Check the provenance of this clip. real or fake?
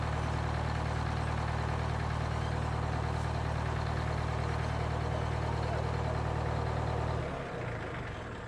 real